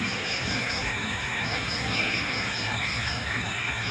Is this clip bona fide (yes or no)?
no